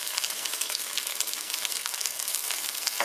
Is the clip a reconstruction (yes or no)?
yes